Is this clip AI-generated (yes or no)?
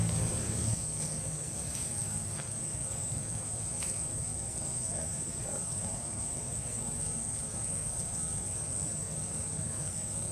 yes